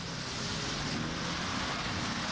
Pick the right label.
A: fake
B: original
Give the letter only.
B